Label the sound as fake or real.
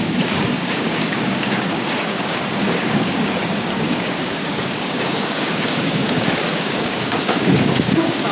fake